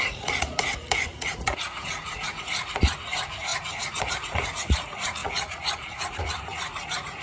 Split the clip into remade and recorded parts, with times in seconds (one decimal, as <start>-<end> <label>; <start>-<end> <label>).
0.0-3.5 remade; 3.5-4.0 recorded; 4.0-7.2 remade